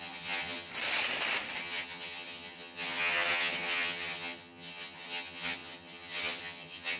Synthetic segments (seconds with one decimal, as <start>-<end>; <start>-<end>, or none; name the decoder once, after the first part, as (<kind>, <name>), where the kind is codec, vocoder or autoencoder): 0.0-0.7 (vocoder, HiFi-GAN); 1.6-7.0